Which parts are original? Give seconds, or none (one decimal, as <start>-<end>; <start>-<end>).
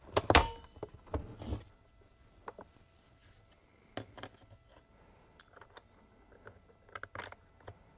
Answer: 0.0-8.0